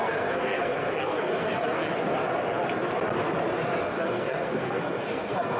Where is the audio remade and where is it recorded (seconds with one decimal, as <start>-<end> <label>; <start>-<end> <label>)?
0.0-1.8 remade; 1.8-3.8 recorded; 3.8-5.6 remade